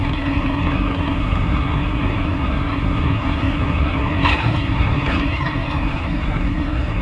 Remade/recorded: remade